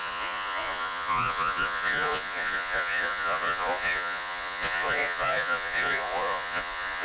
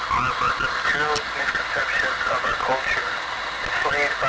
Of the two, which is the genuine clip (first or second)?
second